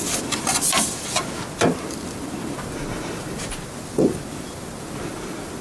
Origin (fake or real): real